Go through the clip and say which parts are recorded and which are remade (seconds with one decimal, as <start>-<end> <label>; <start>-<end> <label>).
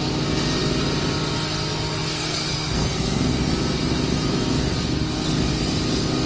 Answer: 0.0-2.1 recorded; 2.1-3.5 remade; 3.5-6.3 recorded